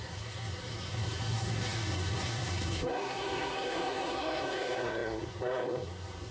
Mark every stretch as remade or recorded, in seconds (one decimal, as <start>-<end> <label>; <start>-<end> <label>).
0.0-6.3 remade